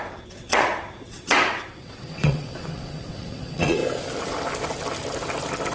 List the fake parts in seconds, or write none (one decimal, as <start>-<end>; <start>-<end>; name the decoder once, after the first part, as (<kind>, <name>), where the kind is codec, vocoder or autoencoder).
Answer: 0.0-3.8 (vocoder, WaveNeXt)